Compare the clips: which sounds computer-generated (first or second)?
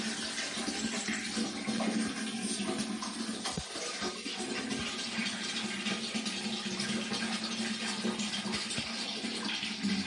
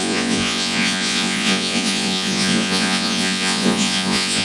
second